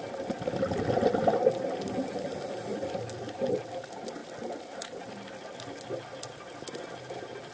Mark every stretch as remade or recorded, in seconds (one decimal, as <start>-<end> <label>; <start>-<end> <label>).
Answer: 0.0-2.7 recorded; 2.7-3.5 remade; 3.5-7.5 recorded